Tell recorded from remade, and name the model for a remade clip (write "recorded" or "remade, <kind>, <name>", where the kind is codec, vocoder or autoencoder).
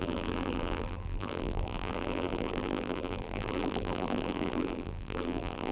remade, vocoder, BigVGAN v2